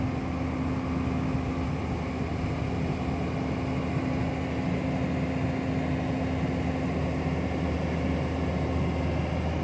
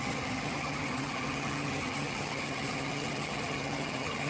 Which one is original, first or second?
first